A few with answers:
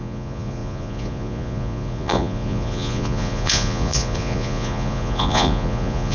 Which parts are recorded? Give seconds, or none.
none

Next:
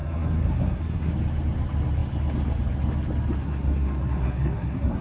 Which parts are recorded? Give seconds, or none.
1.1-3.4